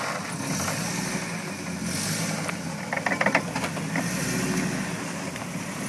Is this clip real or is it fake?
real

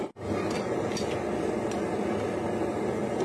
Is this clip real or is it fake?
real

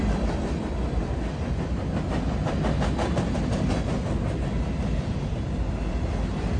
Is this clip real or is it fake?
real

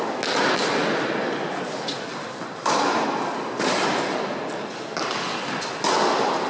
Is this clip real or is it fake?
real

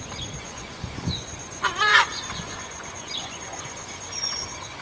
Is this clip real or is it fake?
fake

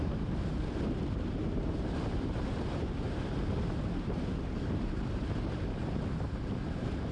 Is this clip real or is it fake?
fake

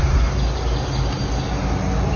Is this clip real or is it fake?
real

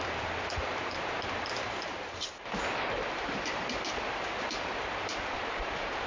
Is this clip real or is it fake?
fake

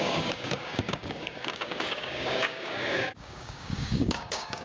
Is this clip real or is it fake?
fake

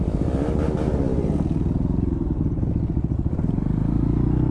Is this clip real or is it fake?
real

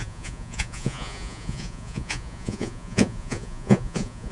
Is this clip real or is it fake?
fake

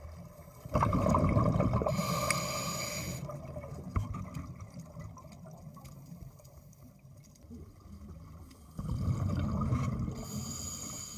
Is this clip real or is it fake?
real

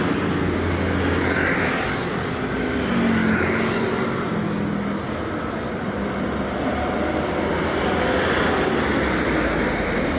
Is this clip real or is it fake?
real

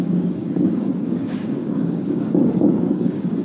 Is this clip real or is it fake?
fake